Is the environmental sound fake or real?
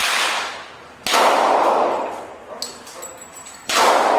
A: real